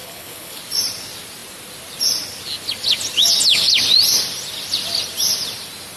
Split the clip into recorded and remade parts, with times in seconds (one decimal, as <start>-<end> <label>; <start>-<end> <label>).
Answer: 0.0-0.6 remade; 0.6-6.0 recorded